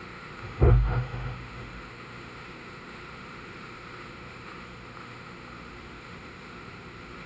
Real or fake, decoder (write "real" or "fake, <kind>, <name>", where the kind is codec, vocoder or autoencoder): fake, autoencoder, DAC-VAE